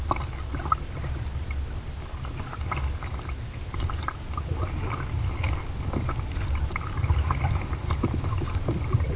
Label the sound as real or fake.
real